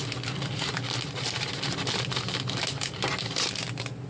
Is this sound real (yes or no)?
yes